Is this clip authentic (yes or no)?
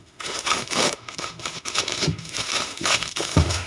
no